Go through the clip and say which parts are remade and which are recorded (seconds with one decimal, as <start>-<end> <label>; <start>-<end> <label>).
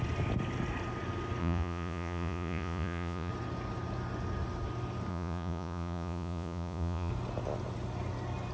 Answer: 0.0-1.4 recorded; 1.4-3.3 remade; 3.3-5.1 recorded; 5.1-7.1 remade; 7.1-8.5 recorded